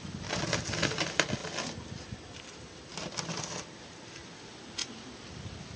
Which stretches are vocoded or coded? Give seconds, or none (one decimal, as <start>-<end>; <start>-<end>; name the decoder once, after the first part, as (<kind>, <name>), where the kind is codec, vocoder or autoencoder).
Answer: 1.4-2.5 (vocoder, BigVGAN v2)